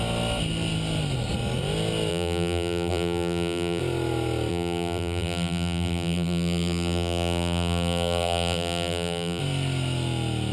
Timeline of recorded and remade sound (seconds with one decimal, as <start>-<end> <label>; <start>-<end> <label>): 0.0-2.1 recorded; 2.1-3.8 remade; 3.8-4.5 recorded; 4.5-9.4 remade; 9.4-10.5 recorded